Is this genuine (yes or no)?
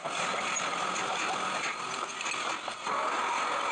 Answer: yes